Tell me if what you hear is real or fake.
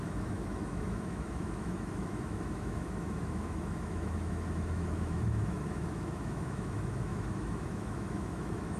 fake